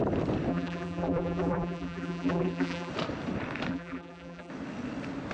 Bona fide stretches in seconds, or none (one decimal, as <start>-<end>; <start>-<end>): 0.0-0.5; 2.9-3.7; 4.5-5.3